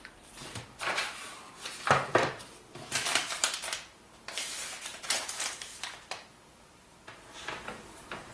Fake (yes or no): yes